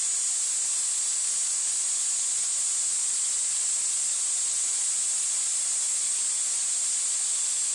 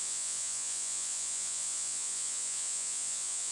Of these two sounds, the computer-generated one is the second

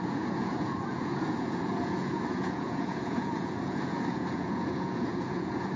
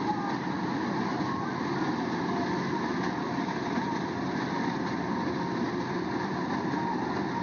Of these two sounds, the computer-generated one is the first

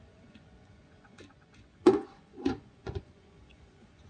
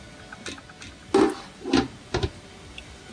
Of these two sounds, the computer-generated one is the first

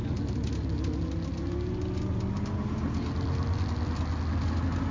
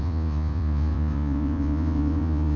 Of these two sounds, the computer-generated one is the second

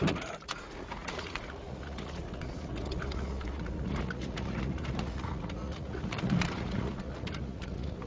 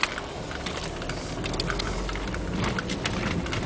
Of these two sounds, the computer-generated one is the first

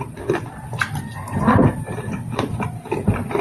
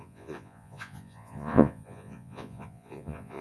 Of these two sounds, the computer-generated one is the second